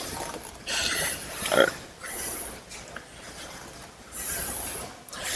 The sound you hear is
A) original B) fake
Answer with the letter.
A